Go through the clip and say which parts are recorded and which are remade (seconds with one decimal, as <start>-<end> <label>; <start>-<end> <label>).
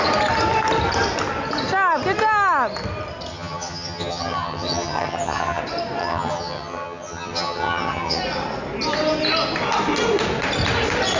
0.0-3.3 recorded; 3.3-5.6 remade; 5.6-6.0 recorded; 6.0-8.2 remade; 8.2-11.2 recorded